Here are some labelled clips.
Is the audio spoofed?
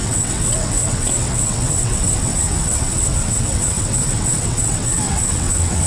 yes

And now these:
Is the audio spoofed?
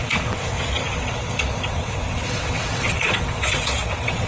yes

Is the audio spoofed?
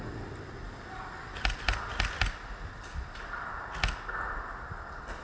no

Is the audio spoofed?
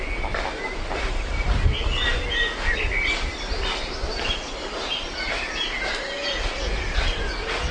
no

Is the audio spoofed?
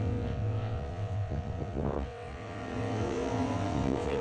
yes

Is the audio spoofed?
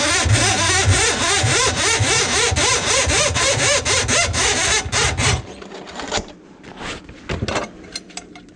no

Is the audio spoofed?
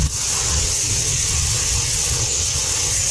yes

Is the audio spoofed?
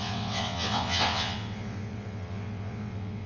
yes